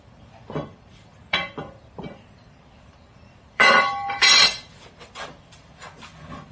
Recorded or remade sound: remade